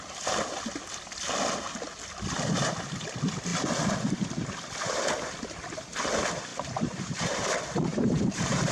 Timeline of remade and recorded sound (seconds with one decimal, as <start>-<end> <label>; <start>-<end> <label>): 0.0-6.5 recorded; 6.5-7.3 remade; 7.3-7.9 recorded; 7.9-8.7 remade